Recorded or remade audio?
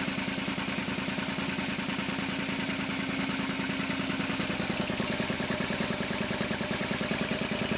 recorded